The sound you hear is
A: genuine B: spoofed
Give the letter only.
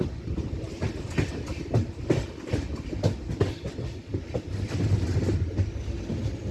A